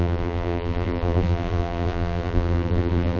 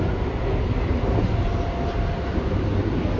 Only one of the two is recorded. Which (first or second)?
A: second